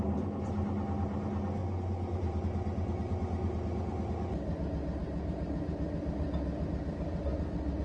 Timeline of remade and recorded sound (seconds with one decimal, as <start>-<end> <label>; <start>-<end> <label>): 0.0-7.8 recorded